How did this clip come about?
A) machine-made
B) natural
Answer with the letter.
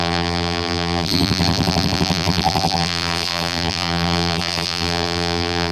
A